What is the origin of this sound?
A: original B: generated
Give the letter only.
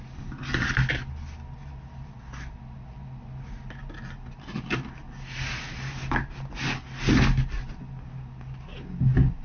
A